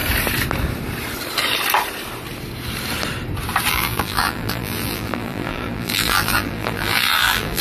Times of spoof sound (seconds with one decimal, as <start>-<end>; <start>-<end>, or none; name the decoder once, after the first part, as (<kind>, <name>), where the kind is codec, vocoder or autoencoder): 3.7-7.6 (vocoder, BigVGAN v2)